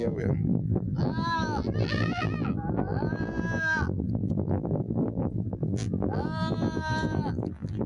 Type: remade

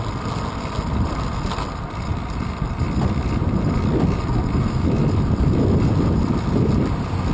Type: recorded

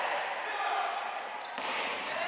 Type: remade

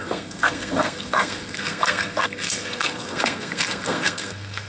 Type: remade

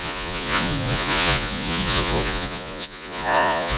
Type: remade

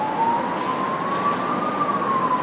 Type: recorded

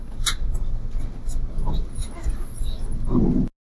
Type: recorded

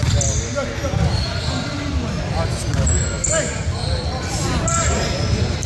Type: recorded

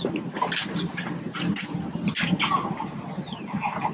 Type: recorded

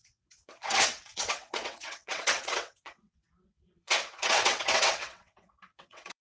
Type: remade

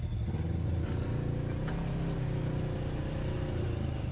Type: recorded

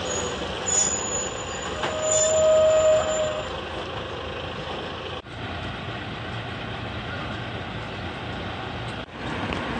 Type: recorded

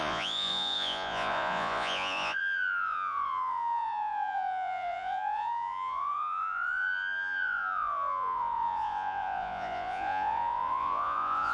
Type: remade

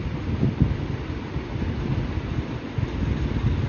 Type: recorded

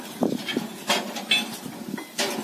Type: recorded